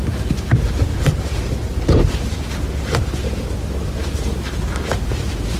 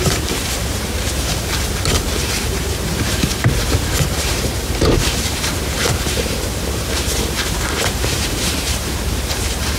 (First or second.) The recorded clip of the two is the first